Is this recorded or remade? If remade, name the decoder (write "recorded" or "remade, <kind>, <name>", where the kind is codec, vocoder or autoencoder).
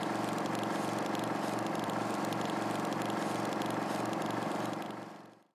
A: recorded